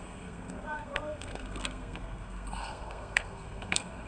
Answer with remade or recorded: remade